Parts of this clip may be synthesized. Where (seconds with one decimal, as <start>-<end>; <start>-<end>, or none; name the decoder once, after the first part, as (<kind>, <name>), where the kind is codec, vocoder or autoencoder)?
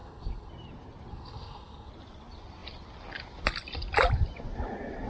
0.0-0.5 (codec, SNAC); 1.1-1.9